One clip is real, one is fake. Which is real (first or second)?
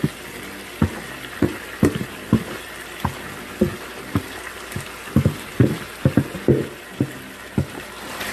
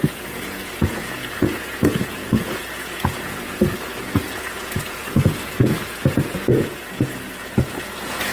first